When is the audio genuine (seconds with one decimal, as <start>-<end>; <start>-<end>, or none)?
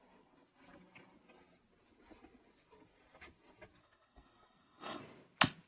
0.0-3.8; 5.0-5.7